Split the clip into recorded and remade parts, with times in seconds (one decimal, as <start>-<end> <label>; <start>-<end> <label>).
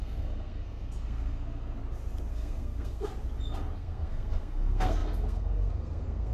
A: 0.0-1.8 remade; 1.8-2.3 recorded; 2.3-3.1 remade; 3.1-3.8 recorded; 3.8-6.3 remade